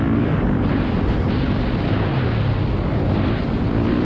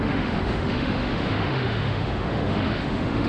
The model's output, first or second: second